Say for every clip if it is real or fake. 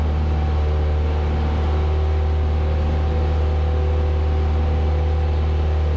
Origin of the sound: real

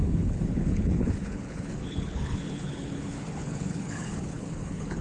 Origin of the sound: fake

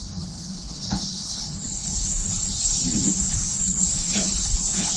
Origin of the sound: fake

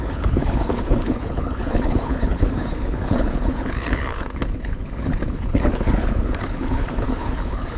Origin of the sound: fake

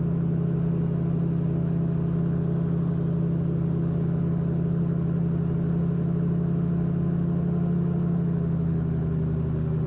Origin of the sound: real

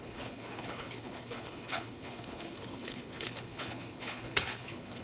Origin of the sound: fake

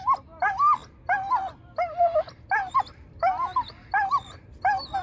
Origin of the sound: real